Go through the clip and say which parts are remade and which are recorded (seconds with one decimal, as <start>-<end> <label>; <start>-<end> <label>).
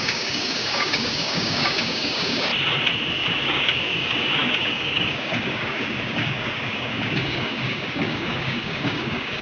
0.0-2.5 remade; 2.5-3.1 recorded; 3.1-9.4 remade